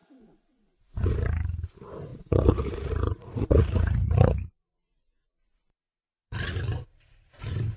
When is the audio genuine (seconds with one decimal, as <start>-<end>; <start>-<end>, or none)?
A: 1.1-2.1; 6.8-7.8